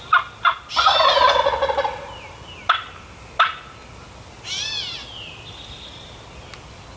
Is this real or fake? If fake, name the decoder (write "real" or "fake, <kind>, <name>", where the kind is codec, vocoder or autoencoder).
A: real